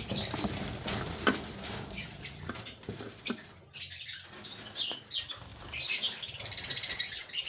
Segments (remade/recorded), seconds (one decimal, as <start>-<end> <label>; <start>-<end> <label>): 0.0-7.5 recorded